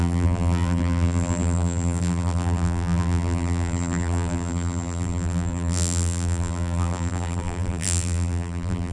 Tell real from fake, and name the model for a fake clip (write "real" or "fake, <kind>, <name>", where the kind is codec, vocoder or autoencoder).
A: fake, vocoder, BigVGAN v2